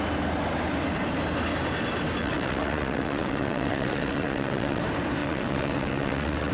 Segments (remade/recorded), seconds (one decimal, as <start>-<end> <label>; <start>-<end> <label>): 0.0-2.2 recorded; 2.2-4.8 remade; 4.8-5.2 recorded; 5.2-6.5 remade